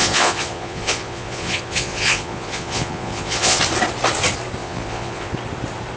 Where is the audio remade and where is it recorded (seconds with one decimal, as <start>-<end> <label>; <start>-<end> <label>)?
0.0-3.6 remade; 3.6-4.6 recorded; 4.6-5.3 remade; 5.3-6.0 recorded